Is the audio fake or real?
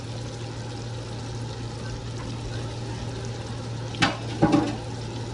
real